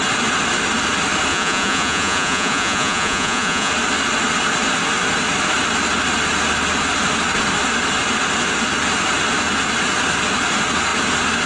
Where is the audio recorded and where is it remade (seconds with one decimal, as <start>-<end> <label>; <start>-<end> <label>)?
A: 0.0-1.3 recorded; 1.3-3.7 remade; 3.7-11.5 recorded